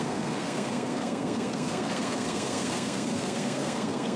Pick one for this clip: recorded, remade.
remade